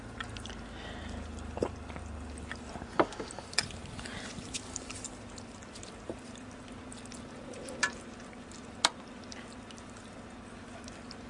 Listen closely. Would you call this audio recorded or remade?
recorded